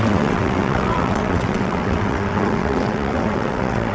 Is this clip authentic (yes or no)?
no